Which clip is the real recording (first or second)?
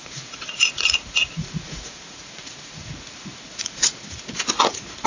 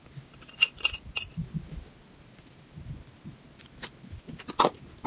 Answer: second